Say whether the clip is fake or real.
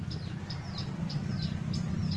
real